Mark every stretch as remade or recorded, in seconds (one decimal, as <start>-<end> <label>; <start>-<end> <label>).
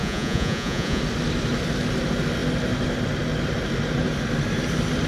0.0-1.0 remade; 1.0-5.1 recorded